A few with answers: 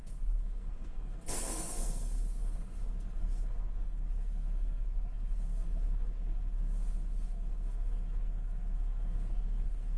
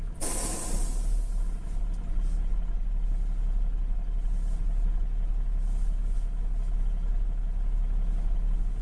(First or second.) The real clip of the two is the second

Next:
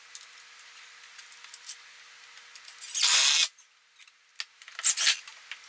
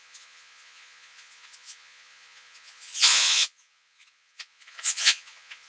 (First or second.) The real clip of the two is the first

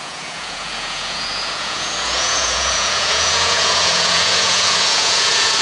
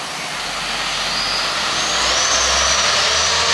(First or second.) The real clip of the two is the second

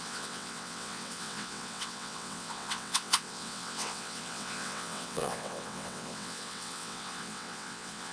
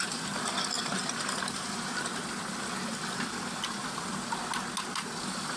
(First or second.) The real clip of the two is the second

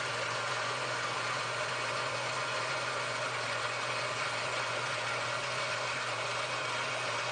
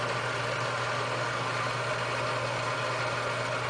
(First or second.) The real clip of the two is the second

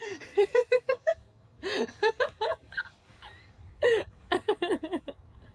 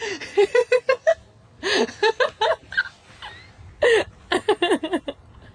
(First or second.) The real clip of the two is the second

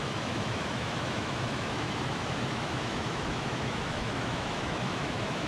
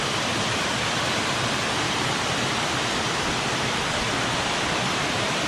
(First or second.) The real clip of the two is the second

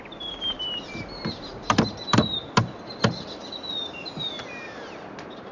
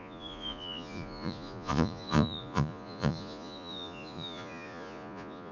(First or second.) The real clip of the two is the first